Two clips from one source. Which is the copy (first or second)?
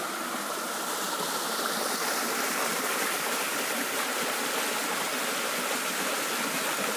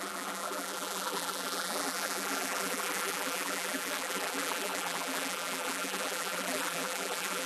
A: second